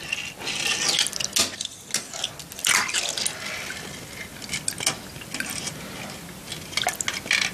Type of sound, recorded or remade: recorded